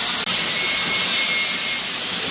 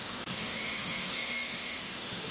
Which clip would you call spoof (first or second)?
second